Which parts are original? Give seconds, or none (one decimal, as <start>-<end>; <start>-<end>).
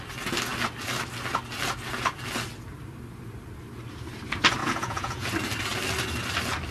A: 0.0-4.6; 5.3-6.7